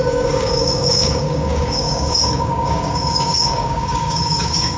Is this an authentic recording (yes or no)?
no